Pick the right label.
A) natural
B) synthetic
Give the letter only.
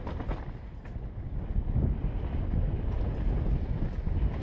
A